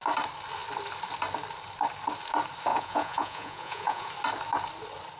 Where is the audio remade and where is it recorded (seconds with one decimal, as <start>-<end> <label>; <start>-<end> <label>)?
0.0-2.7 recorded; 2.7-4.1 remade; 4.1-5.2 recorded